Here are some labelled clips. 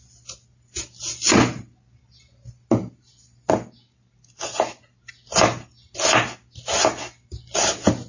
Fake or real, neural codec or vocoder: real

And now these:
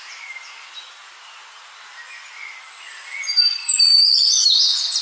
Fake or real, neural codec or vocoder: real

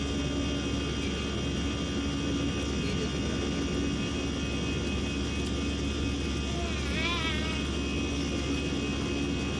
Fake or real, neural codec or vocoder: real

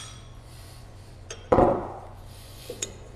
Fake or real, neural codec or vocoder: fake, vocoder, Vocos